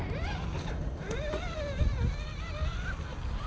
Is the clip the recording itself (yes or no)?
yes